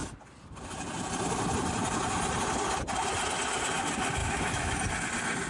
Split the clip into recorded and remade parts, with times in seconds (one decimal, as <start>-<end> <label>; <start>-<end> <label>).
0.0-4.2 recorded; 4.2-4.8 remade; 4.8-5.5 recorded

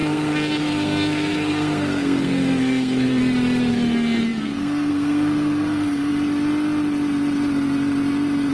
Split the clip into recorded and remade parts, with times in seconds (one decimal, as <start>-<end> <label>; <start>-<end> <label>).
0.0-3.2 remade; 3.2-3.7 recorded; 3.7-6.1 remade; 6.1-8.5 recorded

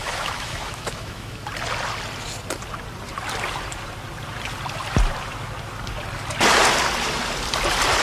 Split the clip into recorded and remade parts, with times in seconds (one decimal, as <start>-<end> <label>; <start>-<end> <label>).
0.0-1.4 remade; 1.4-8.0 recorded

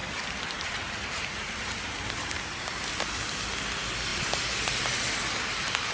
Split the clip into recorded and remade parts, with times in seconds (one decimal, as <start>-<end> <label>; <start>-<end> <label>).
0.0-3.1 remade; 3.1-4.1 recorded; 4.1-5.1 remade; 5.1-5.9 recorded

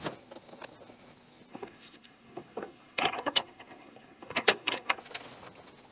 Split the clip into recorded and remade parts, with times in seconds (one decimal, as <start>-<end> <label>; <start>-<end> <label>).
0.0-1.5 recorded; 1.5-5.0 remade; 5.0-5.9 recorded

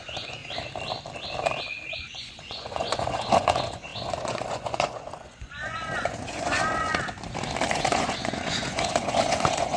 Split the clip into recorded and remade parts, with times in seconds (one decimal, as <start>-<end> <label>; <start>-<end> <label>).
0.0-0.4 remade; 0.4-1.9 recorded; 1.9-6.9 remade; 6.9-7.7 recorded; 7.7-9.8 remade